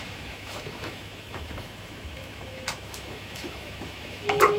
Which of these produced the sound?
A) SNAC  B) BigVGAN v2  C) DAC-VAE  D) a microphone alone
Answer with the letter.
C